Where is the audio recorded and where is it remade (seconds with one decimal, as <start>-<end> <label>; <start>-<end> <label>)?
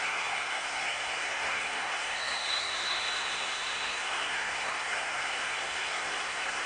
0.0-6.7 remade